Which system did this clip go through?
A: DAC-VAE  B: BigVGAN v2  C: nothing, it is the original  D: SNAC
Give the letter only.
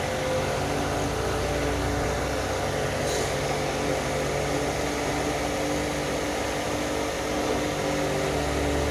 C